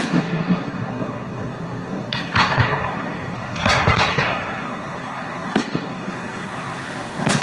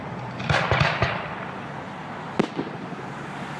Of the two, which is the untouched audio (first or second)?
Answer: second